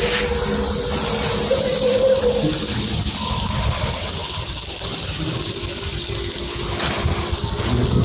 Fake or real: real